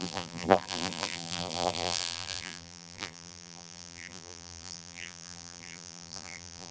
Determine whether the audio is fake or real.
fake